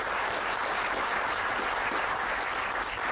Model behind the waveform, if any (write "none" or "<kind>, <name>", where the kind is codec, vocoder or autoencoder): none